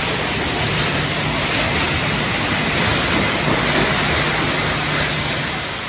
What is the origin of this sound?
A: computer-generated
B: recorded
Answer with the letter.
B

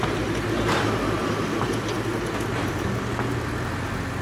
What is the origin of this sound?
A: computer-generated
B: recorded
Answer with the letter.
B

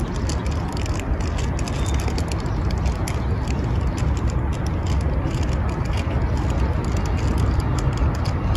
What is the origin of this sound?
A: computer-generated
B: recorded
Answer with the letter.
B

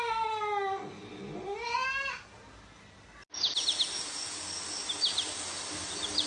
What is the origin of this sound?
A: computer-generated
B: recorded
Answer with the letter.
B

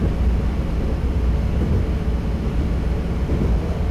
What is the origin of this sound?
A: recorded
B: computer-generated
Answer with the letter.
A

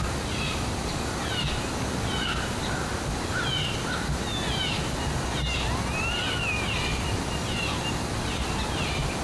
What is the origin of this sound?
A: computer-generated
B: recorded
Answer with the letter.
B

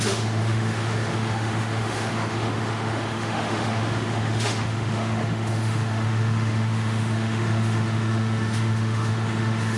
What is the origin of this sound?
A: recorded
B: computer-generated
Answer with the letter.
B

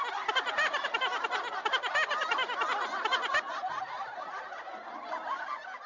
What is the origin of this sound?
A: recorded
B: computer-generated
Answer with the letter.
A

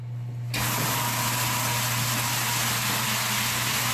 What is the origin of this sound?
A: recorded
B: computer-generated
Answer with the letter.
A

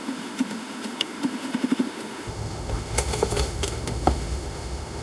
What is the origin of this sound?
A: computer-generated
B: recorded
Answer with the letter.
A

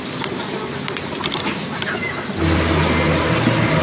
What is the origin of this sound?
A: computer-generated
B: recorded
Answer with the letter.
B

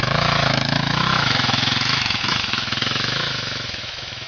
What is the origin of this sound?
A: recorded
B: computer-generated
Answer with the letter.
B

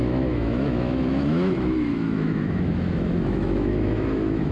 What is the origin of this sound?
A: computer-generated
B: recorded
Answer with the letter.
A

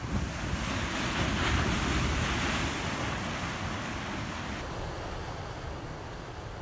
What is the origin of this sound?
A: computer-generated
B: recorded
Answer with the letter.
B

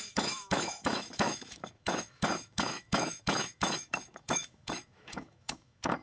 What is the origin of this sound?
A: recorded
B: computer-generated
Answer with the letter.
B